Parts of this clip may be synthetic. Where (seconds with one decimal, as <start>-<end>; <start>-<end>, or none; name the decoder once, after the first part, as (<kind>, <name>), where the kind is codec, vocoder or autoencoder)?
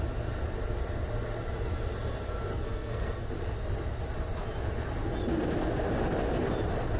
2.5-3.3 (codec, SNAC)